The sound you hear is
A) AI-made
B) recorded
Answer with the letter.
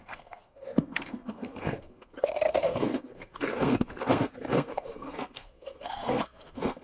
A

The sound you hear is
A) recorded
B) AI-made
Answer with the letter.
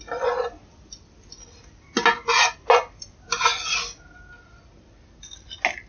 A